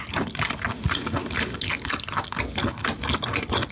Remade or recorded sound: recorded